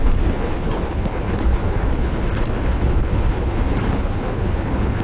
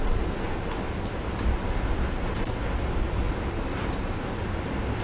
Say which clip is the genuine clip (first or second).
second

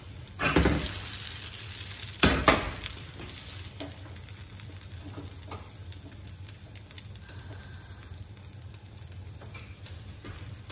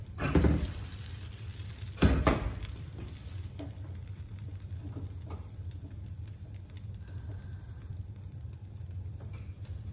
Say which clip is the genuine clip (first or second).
first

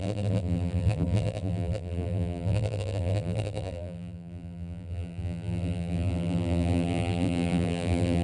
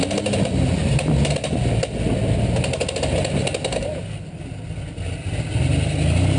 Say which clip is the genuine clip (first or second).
second